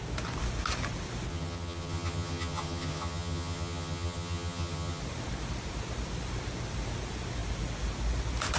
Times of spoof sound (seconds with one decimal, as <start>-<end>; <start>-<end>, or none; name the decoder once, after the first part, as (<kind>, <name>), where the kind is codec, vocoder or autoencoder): 1.3-5.0 (vocoder, HiFi-GAN)